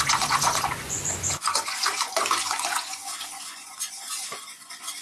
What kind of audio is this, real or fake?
fake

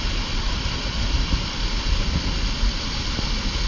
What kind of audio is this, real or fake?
real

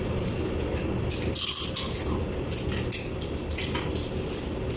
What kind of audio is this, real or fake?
real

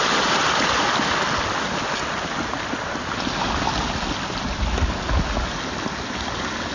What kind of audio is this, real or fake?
real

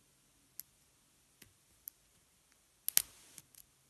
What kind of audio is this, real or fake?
real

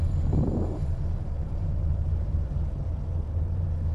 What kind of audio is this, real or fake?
fake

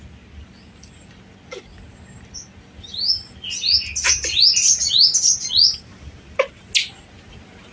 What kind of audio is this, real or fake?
real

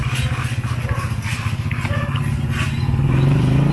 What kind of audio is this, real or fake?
real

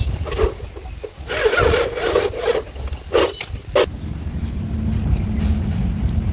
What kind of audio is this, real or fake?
real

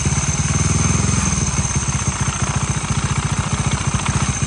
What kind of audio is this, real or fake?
real